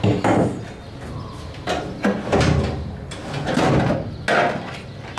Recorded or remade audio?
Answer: recorded